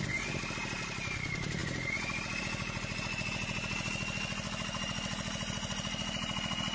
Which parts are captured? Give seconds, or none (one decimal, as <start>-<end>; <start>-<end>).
0.0-6.7